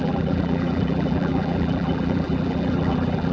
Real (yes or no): no